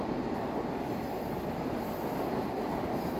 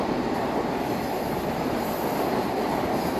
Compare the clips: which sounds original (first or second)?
first